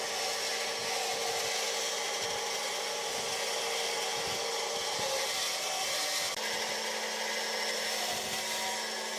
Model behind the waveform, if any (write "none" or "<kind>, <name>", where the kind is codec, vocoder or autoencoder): none